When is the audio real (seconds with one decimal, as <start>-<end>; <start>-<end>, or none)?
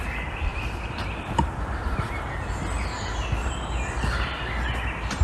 0.0-5.2